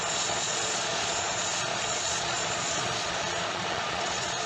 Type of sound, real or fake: fake